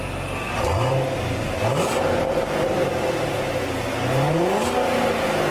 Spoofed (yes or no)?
no